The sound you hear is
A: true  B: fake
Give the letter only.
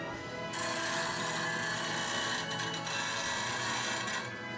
A